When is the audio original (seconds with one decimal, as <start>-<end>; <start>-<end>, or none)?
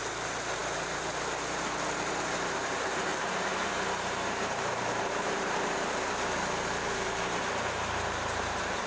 none